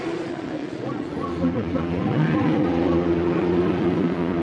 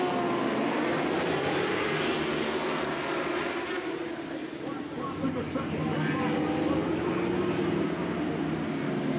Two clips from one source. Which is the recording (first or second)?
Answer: second